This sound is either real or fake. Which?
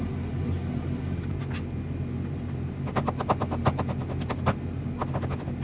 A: real